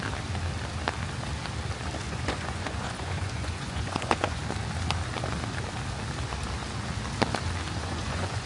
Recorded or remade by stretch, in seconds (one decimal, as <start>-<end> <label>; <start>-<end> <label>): 0.0-2.0 recorded; 2.0-4.4 remade; 4.4-7.8 recorded; 7.8-8.5 remade